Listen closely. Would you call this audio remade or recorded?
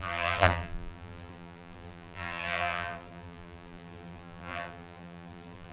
remade